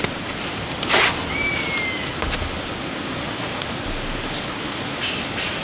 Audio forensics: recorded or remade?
recorded